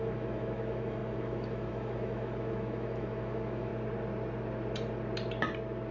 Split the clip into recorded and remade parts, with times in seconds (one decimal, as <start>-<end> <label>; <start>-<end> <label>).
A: 0.0-3.7 remade; 3.7-5.9 recorded